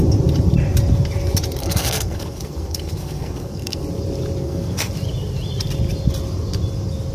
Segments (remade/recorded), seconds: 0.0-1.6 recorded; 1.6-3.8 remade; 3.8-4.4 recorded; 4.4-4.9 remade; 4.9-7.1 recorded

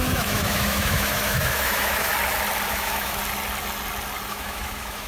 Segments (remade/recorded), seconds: 0.0-2.1 remade; 2.1-2.7 recorded; 2.7-3.2 remade; 3.2-4.3 recorded; 4.3-5.1 remade

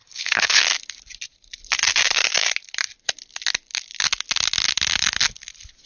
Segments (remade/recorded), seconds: 0.0-0.6 remade; 0.6-5.9 recorded

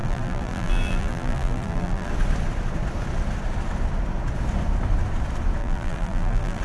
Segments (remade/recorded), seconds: 0.0-2.1 remade; 2.1-5.6 recorded; 5.6-6.6 remade